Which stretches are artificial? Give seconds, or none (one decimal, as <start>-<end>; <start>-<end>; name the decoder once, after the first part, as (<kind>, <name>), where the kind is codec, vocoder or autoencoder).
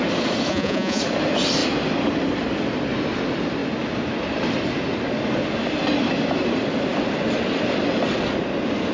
0.5-1.0 (vocoder, Vocos)